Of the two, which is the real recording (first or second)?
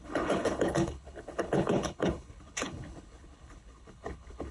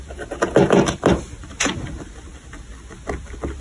second